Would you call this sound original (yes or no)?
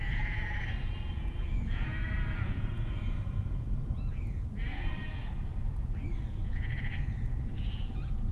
no